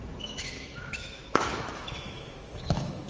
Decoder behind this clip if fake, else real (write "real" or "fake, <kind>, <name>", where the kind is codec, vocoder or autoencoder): fake, autoencoder, DAC-VAE